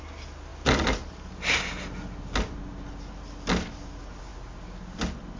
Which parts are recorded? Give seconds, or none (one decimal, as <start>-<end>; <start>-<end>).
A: 0.0-5.4